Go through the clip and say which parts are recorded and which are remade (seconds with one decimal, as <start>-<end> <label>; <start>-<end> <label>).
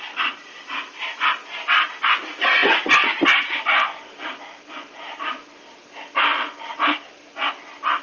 0.0-2.6 remade; 2.6-3.4 recorded; 3.4-8.0 remade